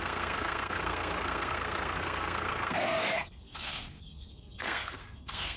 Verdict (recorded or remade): remade